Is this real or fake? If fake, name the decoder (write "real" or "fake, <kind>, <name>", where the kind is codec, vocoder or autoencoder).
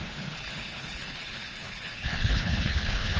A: fake, codec, HILCodec